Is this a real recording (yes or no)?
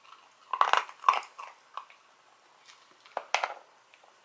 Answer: yes